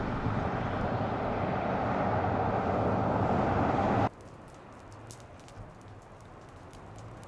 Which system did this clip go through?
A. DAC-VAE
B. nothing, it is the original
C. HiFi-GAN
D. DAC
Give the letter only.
B